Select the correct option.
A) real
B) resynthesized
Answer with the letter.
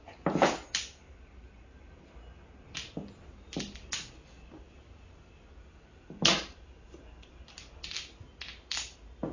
A